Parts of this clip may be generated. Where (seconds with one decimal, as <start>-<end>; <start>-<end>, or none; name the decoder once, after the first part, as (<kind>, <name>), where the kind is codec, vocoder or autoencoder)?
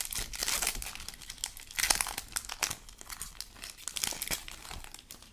0.4-1.2 (vocoder, BigVGAN v2)